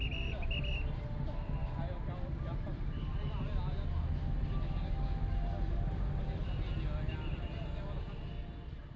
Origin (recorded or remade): recorded